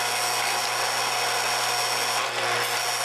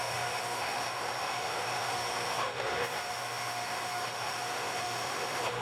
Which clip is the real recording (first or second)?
first